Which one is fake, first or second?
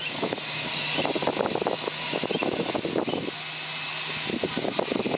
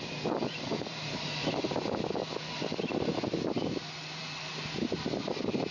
second